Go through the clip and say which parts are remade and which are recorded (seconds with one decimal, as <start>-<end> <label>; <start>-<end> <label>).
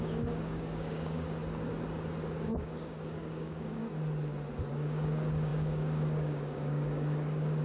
0.0-1.4 remade; 1.4-2.6 recorded; 2.6-3.8 remade; 3.8-4.7 recorded; 4.7-7.6 remade